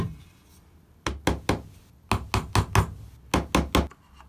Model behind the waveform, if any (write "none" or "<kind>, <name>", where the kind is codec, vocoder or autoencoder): none